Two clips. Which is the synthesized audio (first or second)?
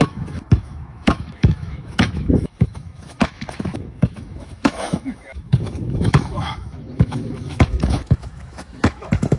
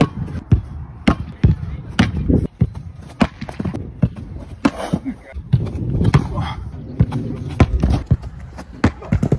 first